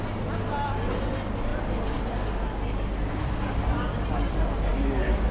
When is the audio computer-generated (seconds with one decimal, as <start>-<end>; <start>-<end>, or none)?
none